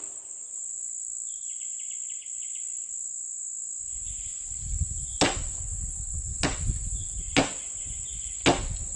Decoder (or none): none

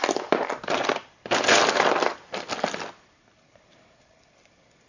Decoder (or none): vocoder, BigVGAN v2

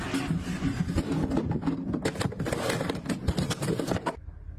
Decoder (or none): none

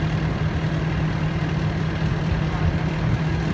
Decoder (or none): none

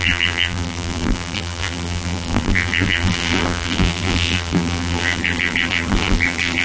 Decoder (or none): vocoder, BigVGAN v2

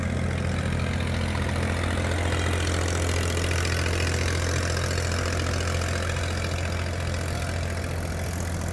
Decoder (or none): none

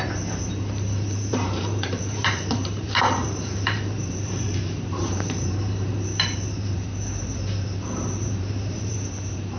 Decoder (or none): vocoder, BigVGAN v2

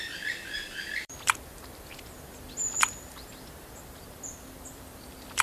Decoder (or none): vocoder, BigVGAN v2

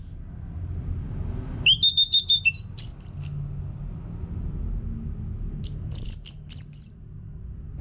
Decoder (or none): none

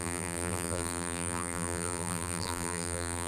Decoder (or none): vocoder, BigVGAN v2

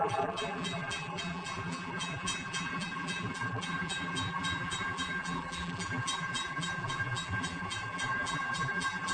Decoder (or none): vocoder, BigVGAN v2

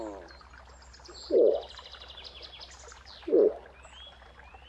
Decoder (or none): none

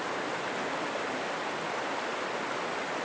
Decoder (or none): none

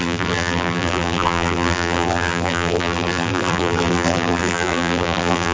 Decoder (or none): vocoder, BigVGAN v2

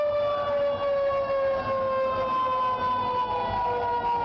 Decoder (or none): none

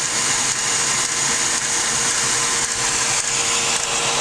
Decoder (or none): none